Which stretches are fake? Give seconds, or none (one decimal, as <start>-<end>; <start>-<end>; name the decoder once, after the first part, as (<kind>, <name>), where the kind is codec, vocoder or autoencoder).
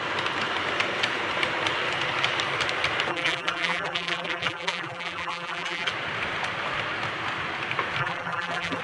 3.1-5.9 (vocoder, BigVGAN v2); 8.0-8.8